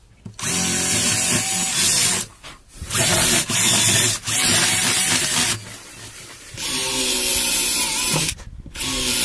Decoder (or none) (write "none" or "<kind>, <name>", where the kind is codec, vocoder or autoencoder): none